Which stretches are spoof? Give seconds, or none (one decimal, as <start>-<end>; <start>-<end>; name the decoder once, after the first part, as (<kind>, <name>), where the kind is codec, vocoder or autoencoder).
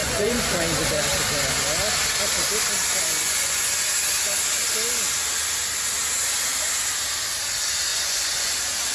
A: 0.0-0.6 (vocoder, Vocos); 2.8-3.7; 7.9-8.5